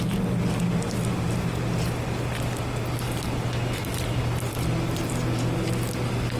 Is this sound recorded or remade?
recorded